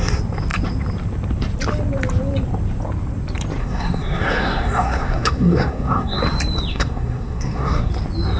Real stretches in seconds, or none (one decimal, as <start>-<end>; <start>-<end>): 0.0-3.6; 6.2-6.7; 7.9-8.4